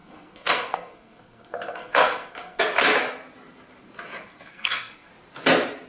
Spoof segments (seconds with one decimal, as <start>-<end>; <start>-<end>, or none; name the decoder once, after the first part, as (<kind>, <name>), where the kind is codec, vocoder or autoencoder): 0.0-2.6 (codec, SNAC); 4.5-5.1